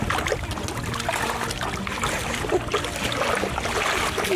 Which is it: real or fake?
real